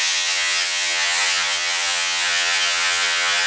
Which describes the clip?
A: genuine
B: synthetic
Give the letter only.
B